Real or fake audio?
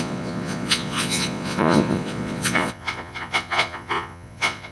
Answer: fake